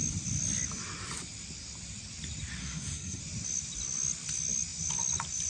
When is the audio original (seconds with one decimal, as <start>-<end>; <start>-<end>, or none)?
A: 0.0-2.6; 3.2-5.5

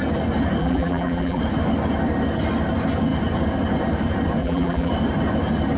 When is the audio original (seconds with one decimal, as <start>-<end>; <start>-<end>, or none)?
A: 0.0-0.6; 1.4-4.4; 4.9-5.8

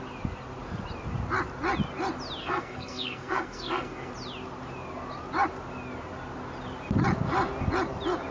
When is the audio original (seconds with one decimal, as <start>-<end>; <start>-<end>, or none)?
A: 0.0-2.4; 4.1-8.3

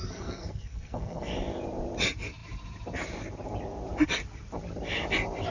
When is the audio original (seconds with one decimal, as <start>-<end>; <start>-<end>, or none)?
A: 1.3-5.5